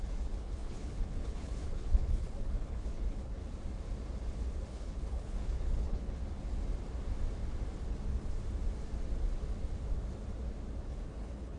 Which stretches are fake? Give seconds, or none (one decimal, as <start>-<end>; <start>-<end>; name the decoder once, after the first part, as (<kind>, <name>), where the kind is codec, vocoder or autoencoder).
0.0-3.4 (codec, HILCodec); 4.7-6.2; 10.8-11.6